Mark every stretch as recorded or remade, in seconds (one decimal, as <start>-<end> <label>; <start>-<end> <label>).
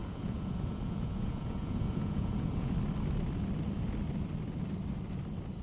0.0-2.7 remade; 2.7-5.6 recorded